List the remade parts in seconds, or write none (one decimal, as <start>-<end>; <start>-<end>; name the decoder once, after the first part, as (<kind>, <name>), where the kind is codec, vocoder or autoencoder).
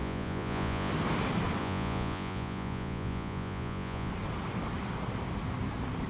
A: 0.0-0.9 (vocoder, Vocos); 1.6-4.1